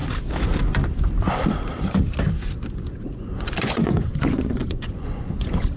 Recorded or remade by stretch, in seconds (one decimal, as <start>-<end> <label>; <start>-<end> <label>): 0.0-2.9 recorded; 2.9-5.8 remade